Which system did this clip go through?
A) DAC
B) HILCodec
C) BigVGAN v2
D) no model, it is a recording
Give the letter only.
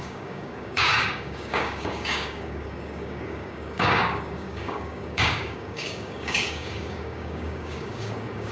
A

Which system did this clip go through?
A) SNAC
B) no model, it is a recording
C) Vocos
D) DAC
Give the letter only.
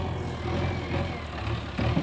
B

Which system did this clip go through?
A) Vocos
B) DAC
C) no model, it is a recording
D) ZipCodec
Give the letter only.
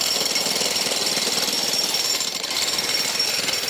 C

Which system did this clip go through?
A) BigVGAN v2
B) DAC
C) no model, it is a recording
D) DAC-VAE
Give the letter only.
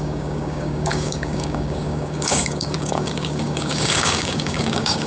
B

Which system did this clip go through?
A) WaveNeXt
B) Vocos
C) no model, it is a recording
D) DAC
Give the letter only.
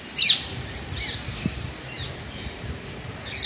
C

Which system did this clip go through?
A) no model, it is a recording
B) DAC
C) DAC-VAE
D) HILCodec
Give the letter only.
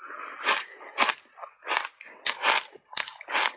A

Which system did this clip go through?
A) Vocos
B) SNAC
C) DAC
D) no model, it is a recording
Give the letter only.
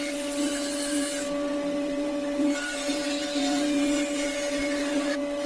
D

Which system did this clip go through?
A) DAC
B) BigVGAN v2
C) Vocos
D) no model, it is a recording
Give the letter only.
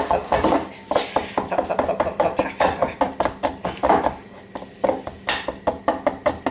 D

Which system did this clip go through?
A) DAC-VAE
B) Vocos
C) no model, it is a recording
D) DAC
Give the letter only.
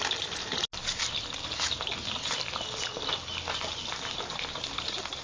C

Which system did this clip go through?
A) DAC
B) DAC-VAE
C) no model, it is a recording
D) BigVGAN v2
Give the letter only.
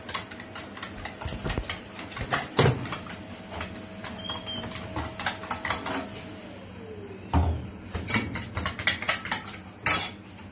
C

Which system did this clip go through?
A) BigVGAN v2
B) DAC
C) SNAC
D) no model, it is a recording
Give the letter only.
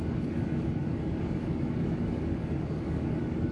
B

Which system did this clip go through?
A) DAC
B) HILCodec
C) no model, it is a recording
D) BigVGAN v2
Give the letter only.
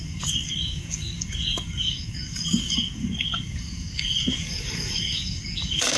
A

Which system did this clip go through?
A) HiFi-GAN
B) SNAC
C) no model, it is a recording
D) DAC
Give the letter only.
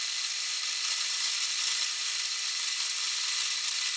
C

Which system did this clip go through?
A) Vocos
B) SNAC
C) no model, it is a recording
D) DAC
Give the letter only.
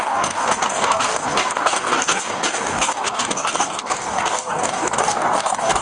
D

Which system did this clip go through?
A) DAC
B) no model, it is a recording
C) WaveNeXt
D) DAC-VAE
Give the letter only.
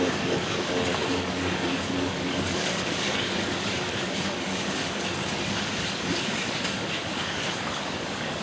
A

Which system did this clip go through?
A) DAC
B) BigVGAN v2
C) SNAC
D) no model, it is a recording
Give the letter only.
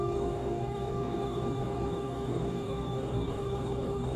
A